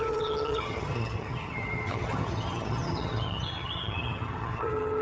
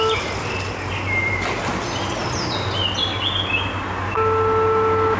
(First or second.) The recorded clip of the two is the second